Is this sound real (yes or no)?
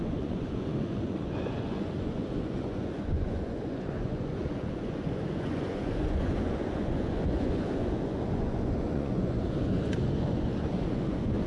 no